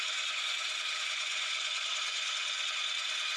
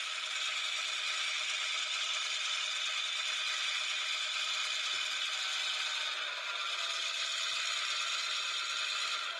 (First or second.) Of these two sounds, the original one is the second